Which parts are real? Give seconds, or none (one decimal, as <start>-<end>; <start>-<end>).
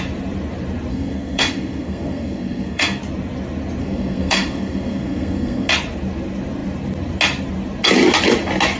0.0-0.9; 3.0-3.8; 5.7-8.8